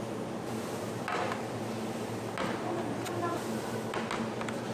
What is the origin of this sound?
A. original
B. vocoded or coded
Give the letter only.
A